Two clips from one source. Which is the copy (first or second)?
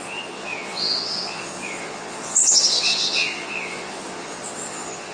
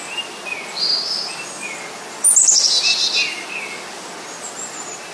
first